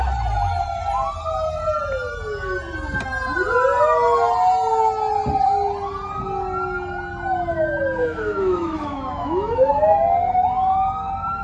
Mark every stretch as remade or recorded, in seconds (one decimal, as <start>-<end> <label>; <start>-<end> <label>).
0.0-8.0 recorded; 8.0-9.7 remade; 9.7-11.4 recorded